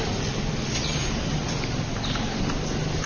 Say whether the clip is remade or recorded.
recorded